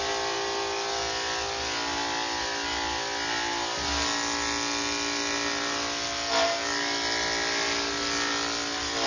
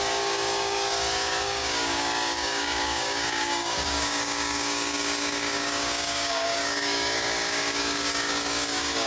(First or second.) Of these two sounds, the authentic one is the first